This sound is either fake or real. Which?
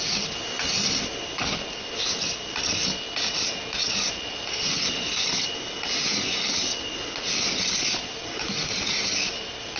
real